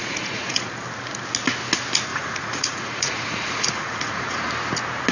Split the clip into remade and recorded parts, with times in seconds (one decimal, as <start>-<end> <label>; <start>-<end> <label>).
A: 0.0-0.7 remade; 0.7-2.1 recorded; 2.1-4.5 remade; 4.5-5.1 recorded